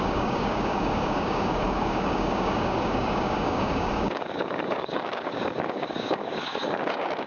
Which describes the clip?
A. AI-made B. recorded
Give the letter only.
A